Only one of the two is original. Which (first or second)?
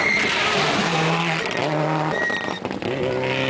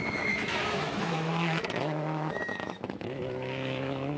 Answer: first